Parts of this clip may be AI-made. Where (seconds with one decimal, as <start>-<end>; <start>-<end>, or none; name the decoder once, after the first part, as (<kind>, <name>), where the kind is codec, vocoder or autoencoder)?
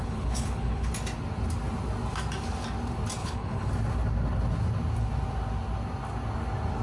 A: 0.0-0.9 (codec, HILCodec); 3.2-3.7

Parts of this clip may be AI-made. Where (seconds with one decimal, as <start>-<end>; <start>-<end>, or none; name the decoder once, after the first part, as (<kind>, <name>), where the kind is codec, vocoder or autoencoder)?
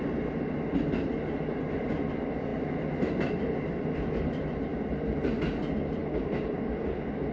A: none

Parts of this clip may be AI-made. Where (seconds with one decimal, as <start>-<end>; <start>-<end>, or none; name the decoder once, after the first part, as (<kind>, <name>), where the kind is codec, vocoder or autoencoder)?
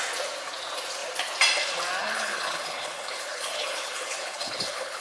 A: 2.0-5.0 (codec, HILCodec)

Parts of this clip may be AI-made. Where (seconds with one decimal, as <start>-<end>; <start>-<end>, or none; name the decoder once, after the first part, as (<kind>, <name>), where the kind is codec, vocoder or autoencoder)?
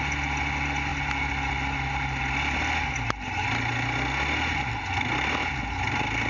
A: none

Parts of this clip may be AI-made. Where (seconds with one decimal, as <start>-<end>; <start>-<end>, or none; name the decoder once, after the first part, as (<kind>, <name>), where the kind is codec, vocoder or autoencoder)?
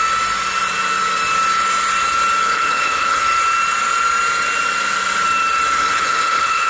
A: 2.4-3.2 (codec, HILCodec); 5.8-6.7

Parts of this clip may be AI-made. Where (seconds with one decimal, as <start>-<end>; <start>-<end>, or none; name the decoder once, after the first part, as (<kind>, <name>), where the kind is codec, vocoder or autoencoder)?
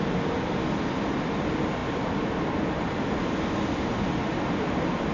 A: none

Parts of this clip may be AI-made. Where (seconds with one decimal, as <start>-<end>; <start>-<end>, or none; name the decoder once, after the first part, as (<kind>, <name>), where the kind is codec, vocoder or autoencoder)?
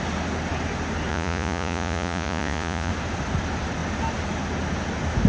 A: 1.1-2.9 (vocoder, Vocos)